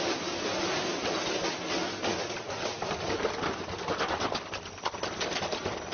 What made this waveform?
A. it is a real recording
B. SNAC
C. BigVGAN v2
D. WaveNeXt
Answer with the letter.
A